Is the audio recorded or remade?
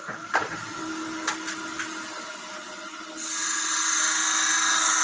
recorded